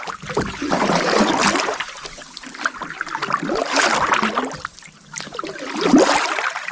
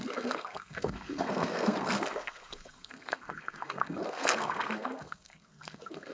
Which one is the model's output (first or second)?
second